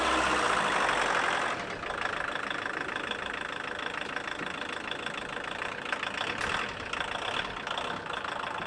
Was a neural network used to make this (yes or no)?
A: no